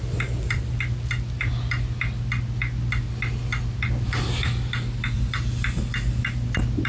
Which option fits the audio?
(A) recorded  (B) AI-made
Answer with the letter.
A